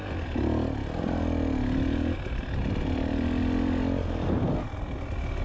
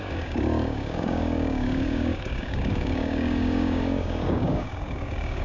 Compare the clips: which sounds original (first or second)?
first